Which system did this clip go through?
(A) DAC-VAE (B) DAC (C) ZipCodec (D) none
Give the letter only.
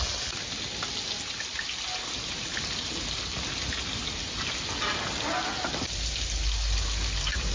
D